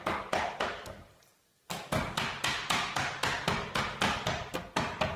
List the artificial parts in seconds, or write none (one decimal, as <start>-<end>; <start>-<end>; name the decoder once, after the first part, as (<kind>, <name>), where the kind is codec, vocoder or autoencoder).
none